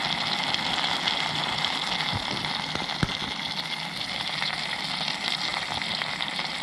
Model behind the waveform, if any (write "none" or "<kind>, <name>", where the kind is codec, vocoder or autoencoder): none